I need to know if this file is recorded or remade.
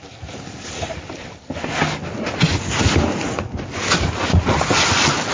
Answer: recorded